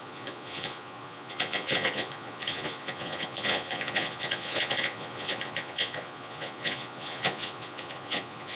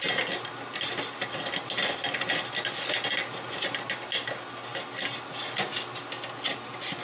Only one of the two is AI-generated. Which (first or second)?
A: first